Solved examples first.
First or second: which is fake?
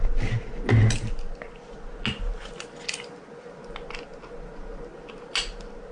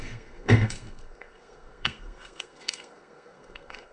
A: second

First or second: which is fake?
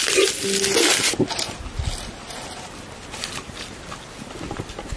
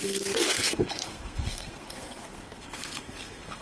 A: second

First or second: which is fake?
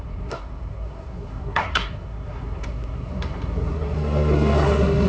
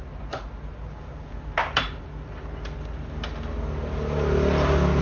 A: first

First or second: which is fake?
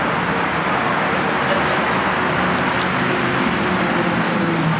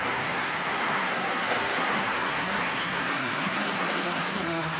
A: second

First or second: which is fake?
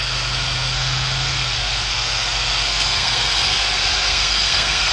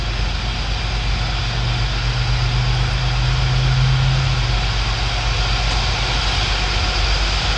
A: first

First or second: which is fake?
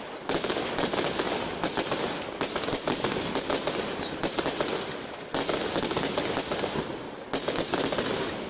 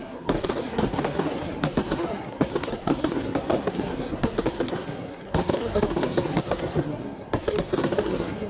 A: second